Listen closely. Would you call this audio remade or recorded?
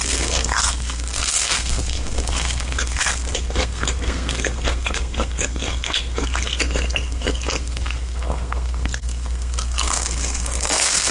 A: remade